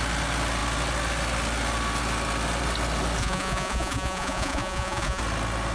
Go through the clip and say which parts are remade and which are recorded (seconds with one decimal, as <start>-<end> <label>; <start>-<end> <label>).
0.0-3.2 recorded; 3.2-5.2 remade; 5.2-5.7 recorded